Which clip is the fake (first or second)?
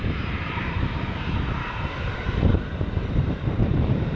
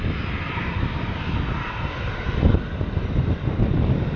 first